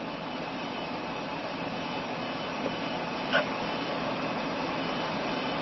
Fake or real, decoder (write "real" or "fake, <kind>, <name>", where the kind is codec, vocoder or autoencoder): real